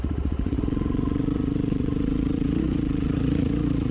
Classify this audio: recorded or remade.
remade